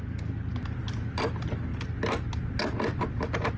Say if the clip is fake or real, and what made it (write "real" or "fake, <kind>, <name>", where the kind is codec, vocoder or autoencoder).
real